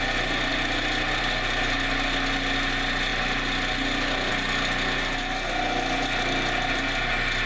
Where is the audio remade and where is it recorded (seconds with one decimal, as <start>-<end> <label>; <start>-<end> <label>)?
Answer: 0.0-7.5 recorded